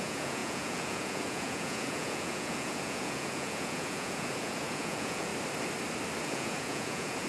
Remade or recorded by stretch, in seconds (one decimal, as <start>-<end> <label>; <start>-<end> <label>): 0.0-5.3 remade; 5.3-6.2 recorded; 6.2-7.3 remade